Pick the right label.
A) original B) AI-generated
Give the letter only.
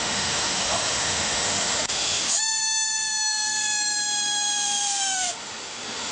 B